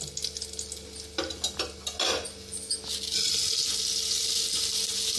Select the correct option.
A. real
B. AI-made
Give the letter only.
A